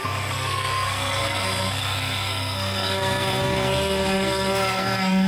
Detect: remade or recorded remade